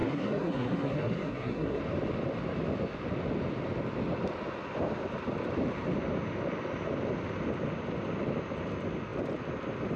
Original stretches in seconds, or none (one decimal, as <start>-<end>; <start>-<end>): 1.8-10.0